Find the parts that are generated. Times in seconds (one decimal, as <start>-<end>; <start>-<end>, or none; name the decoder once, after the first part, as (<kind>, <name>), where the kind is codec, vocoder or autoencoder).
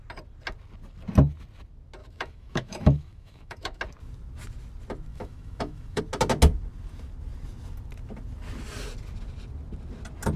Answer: 2.0-3.8 (autoencoder, DAC-VAE); 5.1-6.0